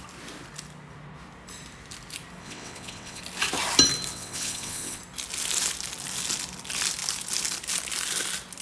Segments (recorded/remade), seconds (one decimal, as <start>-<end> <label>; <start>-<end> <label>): 0.0-2.4 recorded; 2.4-3.2 remade; 3.2-4.1 recorded; 4.1-5.0 remade; 5.0-8.6 recorded